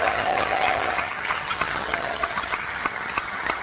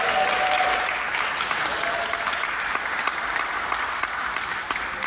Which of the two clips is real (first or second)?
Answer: second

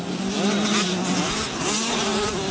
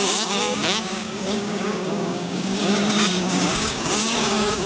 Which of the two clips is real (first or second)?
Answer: first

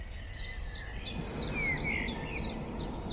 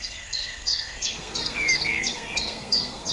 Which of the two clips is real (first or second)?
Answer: first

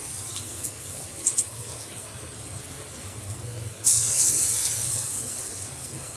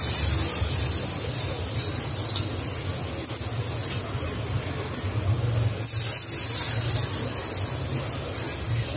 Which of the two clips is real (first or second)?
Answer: second